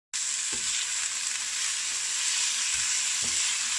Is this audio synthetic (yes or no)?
no